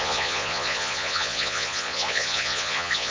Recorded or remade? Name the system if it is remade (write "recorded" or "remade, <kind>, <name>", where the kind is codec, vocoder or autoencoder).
remade, vocoder, Vocos